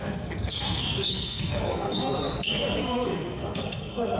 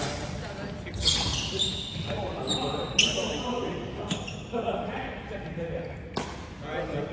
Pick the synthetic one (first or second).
first